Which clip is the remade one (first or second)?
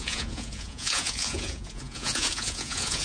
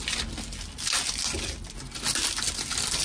first